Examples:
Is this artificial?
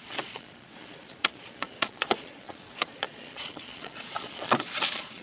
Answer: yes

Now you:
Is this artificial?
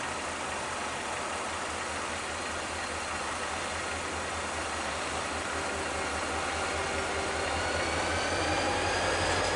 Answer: no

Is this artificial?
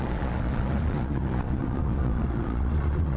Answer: yes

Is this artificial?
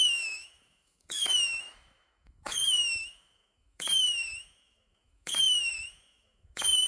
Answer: yes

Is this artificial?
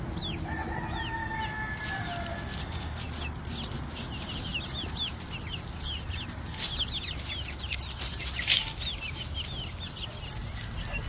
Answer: no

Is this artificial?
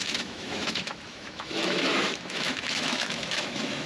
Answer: yes